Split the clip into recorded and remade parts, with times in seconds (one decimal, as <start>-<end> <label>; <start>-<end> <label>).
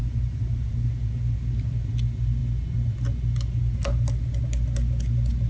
0.0-0.9 remade; 0.9-5.5 recorded